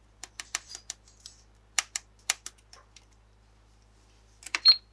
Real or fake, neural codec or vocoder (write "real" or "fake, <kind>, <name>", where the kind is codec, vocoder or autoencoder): fake, vocoder, BigVGAN v2